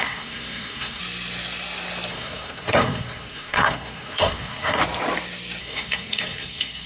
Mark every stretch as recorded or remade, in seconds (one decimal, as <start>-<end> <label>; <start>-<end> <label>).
0.0-1.0 remade; 1.0-2.1 recorded; 2.1-4.8 remade; 4.8-5.6 recorded; 5.6-6.9 remade